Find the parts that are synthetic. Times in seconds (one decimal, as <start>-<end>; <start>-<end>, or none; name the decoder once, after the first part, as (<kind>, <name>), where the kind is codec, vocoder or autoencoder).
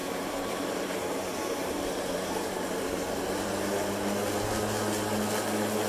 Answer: 0.0-3.5 (vocoder, BigVGAN v2)